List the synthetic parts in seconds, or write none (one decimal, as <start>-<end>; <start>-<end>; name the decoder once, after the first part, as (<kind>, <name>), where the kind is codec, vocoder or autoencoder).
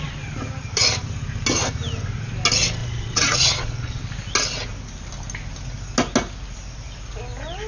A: 2.8-4.0 (vocoder, Vocos)